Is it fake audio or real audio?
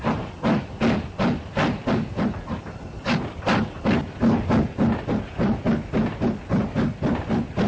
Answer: real